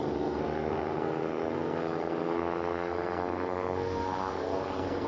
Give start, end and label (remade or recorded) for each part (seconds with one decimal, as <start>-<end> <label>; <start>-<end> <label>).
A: 0.0-5.1 remade